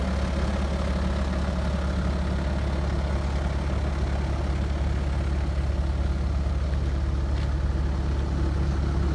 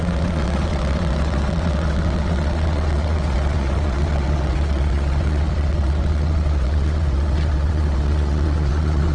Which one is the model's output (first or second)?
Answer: second